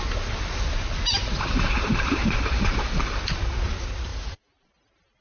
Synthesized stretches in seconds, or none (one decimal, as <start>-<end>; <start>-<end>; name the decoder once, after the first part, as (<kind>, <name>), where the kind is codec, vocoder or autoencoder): 1.2-3.2 (vocoder, BigVGAN v2); 4.1-4.7